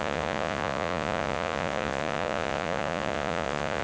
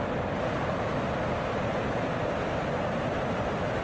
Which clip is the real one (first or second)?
second